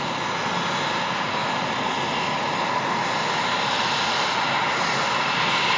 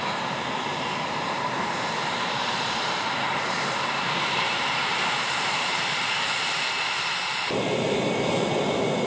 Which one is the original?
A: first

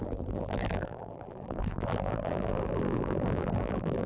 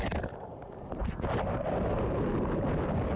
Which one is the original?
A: second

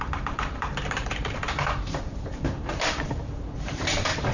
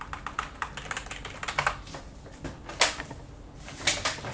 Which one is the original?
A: second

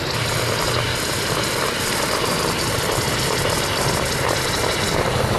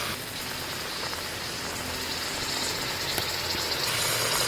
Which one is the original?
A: second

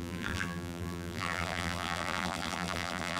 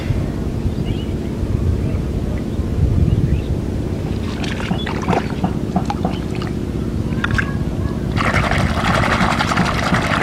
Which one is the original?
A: second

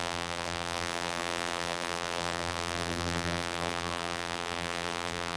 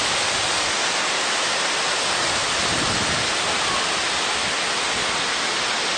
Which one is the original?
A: second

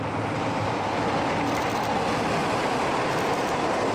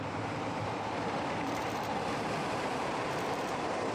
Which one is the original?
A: first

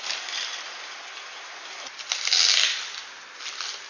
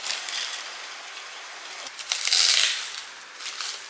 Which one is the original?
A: first